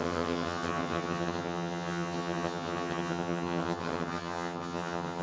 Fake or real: fake